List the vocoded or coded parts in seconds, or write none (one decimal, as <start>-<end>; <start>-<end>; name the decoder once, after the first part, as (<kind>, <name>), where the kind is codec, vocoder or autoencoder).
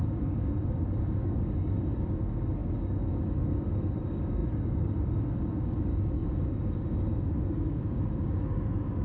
0.0-9.0 (codec, DAC)